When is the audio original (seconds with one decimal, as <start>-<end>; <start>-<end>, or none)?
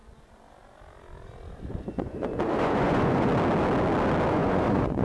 0.0-1.9; 3.3-4.3